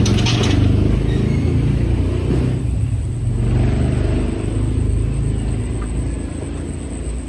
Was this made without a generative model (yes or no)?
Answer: yes